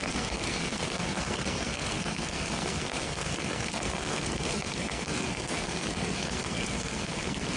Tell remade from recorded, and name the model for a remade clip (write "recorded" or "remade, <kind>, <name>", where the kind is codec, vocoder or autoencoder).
remade, codec, SNAC